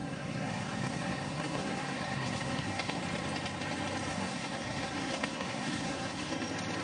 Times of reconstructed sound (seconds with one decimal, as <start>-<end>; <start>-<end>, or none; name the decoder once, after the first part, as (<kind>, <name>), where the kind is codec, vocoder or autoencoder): 0.0-3.0 (codec, SNAC); 4.1-6.3